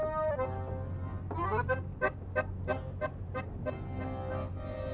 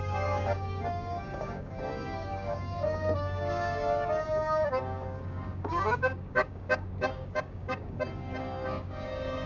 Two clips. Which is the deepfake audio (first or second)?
second